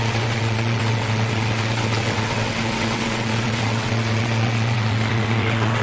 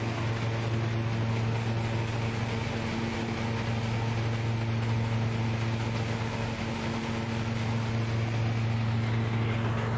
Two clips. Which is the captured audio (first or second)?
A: second